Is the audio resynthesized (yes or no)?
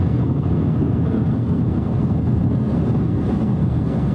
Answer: yes